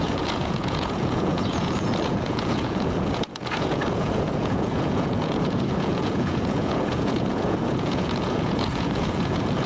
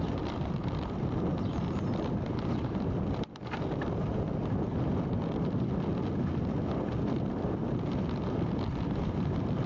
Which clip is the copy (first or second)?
first